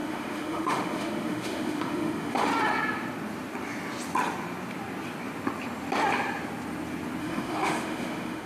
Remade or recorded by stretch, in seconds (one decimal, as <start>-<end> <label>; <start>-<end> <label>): 0.0-2.5 remade; 2.5-7.2 recorded; 7.2-8.5 remade